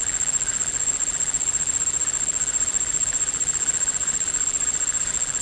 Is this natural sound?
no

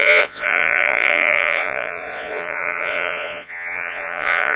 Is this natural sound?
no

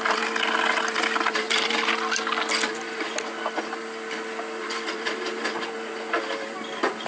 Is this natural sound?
yes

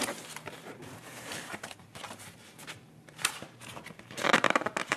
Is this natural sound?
no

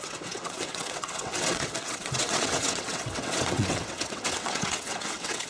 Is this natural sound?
no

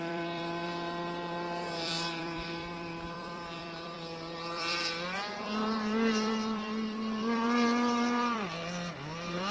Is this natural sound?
no